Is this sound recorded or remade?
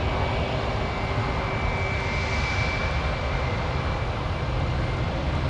recorded